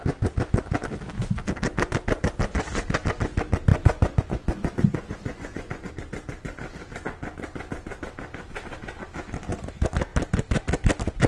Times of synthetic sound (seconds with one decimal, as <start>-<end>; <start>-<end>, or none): 3.7-5.9